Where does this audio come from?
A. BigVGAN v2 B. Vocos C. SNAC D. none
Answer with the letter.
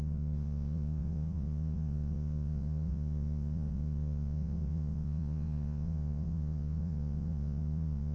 B